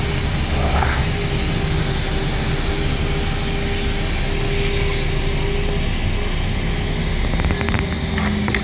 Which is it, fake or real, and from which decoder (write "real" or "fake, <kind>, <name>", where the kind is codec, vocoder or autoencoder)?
real